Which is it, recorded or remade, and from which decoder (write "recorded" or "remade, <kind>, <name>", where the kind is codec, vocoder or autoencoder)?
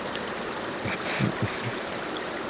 recorded